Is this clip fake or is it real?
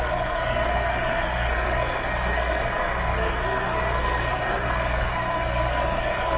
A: fake